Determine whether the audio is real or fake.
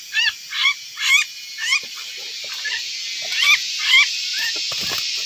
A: real